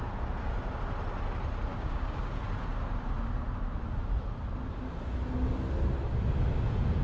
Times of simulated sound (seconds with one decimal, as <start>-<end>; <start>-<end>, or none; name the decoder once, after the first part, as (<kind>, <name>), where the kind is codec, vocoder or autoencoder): 1.7-2.4 (codec, DAC)